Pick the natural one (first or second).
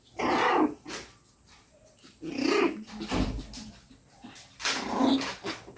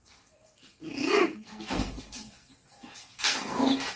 first